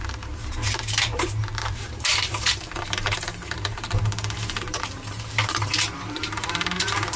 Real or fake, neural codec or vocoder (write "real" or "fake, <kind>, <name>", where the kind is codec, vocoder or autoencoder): fake, vocoder, BigVGAN v2